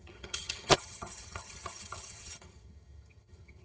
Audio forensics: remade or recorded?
remade